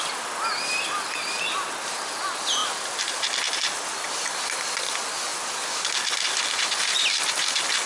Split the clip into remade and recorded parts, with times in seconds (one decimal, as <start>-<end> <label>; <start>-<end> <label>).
0.0-7.9 recorded